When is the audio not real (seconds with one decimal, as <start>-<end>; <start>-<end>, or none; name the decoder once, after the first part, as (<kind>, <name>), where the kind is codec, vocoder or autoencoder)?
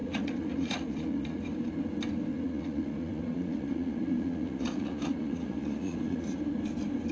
0.0-1.4 (vocoder, Vocos); 2.3-6.4